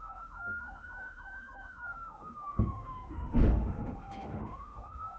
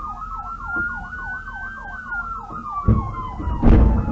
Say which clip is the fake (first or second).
first